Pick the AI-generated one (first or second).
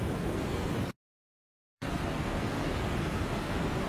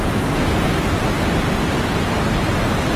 first